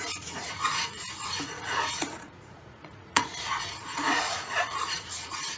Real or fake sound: fake